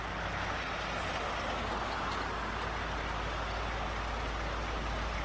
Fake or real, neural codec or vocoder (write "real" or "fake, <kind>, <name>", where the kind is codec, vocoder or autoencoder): real